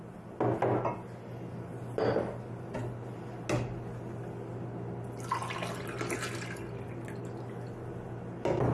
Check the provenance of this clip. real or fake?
real